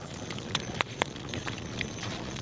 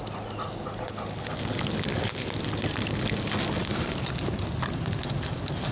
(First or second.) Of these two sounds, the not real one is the first